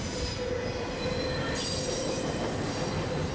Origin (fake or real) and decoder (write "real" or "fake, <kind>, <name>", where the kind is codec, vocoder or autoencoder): real